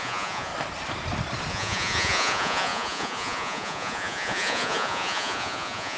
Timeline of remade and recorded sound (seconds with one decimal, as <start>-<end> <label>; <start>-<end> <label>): 0.0-0.5 remade; 0.5-1.5 recorded; 1.5-6.0 remade